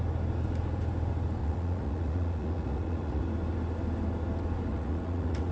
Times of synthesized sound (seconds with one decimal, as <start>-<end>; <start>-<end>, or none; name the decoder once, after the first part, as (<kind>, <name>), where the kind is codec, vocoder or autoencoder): 1.4-3.2 (vocoder, Vocos); 4.7-5.5